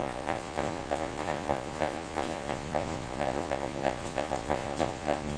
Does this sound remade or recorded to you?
remade